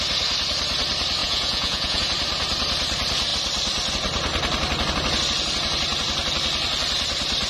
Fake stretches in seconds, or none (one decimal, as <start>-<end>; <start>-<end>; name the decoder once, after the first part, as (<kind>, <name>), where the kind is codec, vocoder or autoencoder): 1.2-2.0 (vocoder, Vocos)

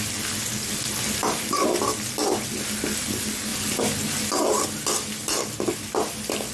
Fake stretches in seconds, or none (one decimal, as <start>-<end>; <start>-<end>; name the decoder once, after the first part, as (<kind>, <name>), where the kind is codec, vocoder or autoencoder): none

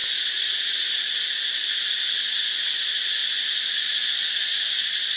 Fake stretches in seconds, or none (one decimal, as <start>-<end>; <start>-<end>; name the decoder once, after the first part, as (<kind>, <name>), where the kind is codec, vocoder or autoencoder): 0.0-0.9 (vocoder, Vocos)

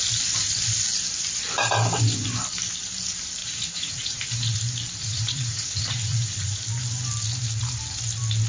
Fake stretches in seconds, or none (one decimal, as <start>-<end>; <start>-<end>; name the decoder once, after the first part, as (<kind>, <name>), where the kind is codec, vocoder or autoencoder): 3.4-4.6 (vocoder, Vocos); 5.0-6.6